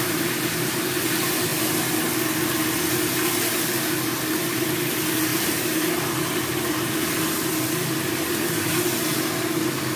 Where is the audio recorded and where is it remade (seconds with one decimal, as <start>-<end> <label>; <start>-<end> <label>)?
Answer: 0.0-5.3 recorded; 5.3-8.8 remade; 8.8-10.0 recorded